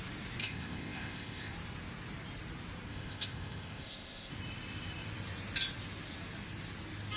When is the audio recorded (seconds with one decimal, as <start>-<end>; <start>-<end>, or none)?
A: 0.0-0.4; 1.5-2.9; 4.3-7.2